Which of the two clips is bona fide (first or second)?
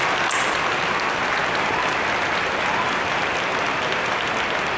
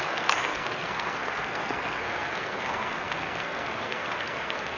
first